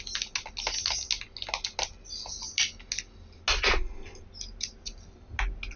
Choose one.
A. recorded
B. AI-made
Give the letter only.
A